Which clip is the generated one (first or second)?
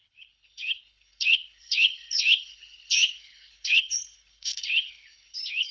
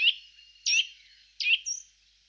first